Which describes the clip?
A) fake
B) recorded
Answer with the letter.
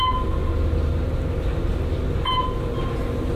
B